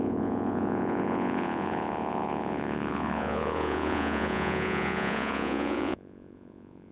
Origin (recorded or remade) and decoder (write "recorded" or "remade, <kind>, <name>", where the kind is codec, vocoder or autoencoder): remade, vocoder, Vocos